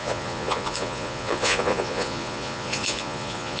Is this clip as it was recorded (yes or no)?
no